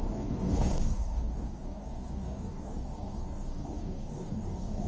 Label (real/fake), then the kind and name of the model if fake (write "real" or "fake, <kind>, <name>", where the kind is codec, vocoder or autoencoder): fake, codec, DAC